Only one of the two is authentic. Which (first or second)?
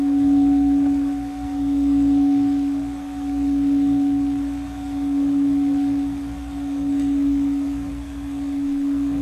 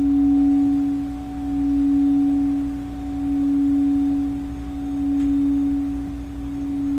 second